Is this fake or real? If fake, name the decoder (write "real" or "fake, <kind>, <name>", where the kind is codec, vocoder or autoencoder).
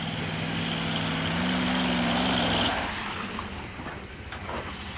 real